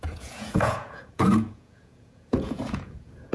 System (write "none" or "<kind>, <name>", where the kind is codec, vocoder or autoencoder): vocoder, Vocos